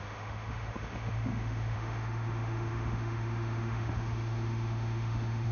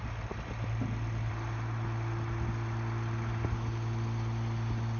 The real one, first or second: second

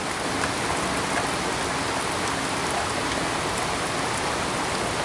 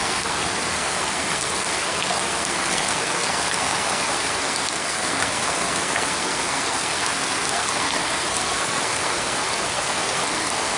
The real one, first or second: first